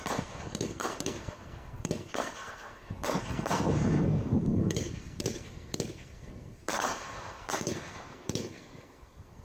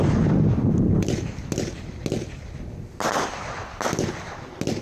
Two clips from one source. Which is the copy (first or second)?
first